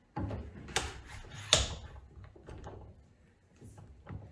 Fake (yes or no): no